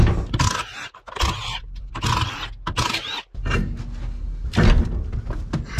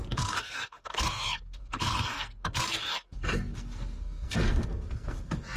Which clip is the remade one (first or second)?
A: second